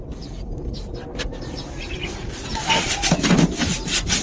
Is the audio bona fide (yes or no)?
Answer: yes